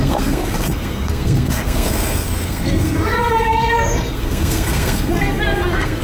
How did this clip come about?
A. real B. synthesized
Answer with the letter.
B